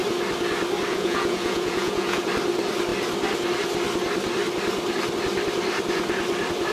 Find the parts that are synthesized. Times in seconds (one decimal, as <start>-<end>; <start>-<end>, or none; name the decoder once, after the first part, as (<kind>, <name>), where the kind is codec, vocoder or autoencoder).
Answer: 0.9-2.2 (vocoder, Vocos)